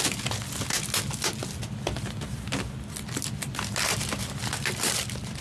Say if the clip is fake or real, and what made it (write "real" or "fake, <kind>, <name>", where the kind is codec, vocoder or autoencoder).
real